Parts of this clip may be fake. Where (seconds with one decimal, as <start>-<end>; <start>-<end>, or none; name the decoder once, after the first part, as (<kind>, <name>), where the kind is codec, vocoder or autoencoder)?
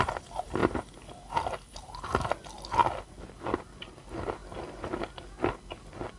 none